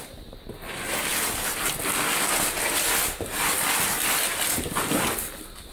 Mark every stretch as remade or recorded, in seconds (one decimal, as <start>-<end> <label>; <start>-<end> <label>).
0.0-5.7 recorded